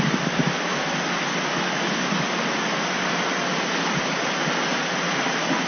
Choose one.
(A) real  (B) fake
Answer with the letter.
A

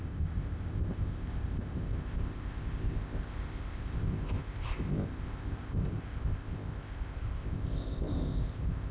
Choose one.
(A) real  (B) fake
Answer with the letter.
B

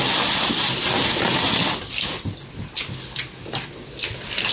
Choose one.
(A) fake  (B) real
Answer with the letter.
B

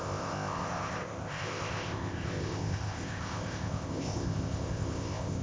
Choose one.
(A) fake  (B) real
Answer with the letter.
A